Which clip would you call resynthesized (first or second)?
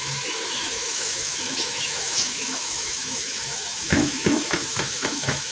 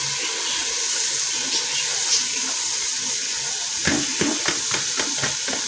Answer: first